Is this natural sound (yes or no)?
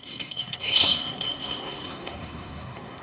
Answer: no